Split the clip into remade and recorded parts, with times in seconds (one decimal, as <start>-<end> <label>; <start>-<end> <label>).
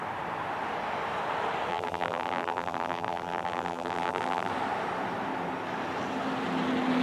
0.0-1.7 recorded; 1.7-4.5 remade; 4.5-7.0 recorded